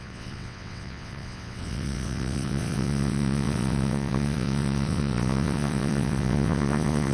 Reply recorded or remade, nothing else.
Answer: remade